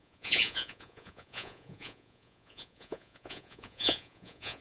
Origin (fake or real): fake